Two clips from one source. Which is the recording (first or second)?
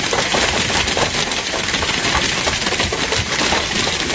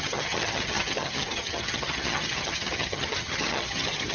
first